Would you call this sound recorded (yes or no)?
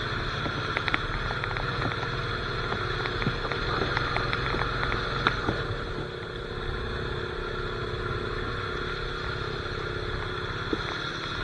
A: yes